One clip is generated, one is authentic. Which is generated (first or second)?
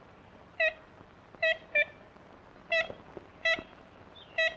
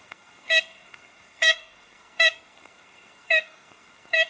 second